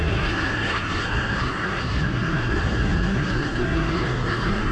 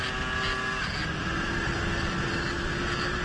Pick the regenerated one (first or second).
first